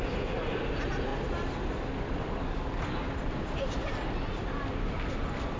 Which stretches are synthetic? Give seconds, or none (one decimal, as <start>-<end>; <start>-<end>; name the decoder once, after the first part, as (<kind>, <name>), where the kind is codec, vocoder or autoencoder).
none